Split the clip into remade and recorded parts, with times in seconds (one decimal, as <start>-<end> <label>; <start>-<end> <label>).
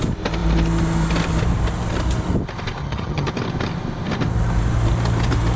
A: 0.0-2.8 recorded; 2.8-3.3 remade; 3.3-5.6 recorded